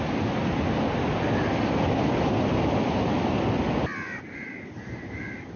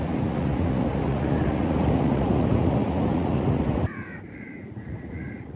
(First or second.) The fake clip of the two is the second